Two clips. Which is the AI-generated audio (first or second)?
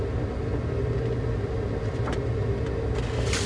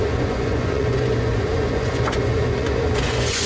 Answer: second